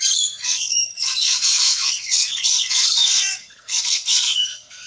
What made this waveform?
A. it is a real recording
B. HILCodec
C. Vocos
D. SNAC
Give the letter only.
D